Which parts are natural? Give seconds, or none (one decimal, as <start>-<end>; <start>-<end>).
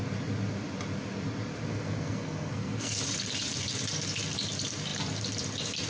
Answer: 0.0-1.7; 3.0-5.9